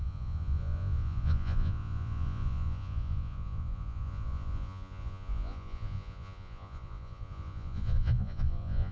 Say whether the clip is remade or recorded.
remade